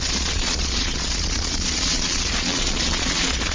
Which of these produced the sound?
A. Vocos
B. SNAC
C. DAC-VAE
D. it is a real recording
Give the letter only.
A